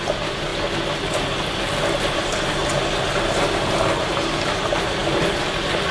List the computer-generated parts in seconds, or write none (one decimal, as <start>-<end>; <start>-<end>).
0.0-0.5; 1.9-2.6; 4.0-5.9